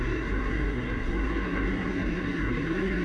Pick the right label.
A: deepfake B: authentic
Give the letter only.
A